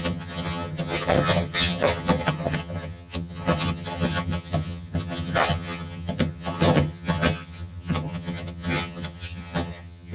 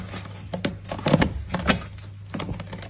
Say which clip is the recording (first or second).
second